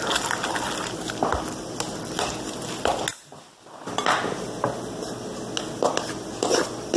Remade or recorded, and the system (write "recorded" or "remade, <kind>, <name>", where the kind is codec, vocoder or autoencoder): recorded